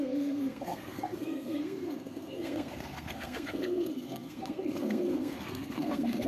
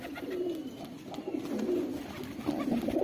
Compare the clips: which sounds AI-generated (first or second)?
first